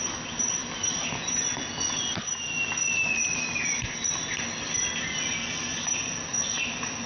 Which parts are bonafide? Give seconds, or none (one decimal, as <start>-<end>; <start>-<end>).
0.0-7.1